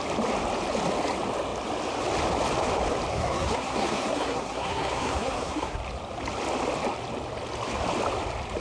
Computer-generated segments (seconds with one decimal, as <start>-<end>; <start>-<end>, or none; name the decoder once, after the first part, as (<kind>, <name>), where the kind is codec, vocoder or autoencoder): 3.1-5.8 (codec, SNAC)